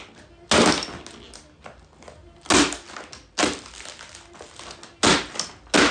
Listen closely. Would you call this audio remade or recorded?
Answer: recorded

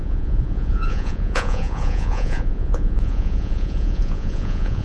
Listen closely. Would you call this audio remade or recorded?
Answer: remade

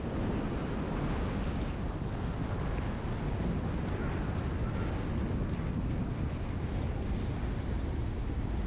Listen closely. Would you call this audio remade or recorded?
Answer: recorded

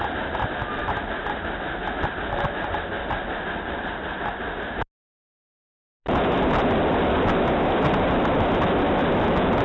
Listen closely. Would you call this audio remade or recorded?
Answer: recorded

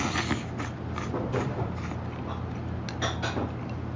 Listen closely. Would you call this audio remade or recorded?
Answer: recorded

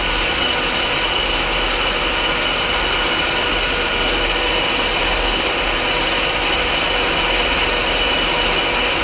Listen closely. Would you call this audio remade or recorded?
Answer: recorded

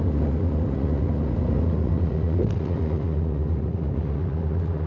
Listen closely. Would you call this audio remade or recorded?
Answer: remade